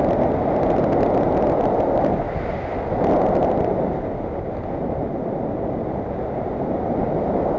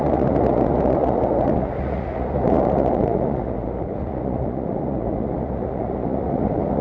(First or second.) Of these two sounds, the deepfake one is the second